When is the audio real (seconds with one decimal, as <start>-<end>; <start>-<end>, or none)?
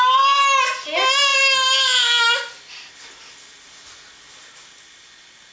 0.0-5.5